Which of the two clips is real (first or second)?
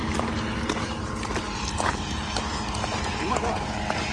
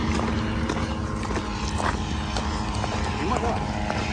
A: second